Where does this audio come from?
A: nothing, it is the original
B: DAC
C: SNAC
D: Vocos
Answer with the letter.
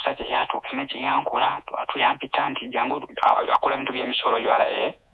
D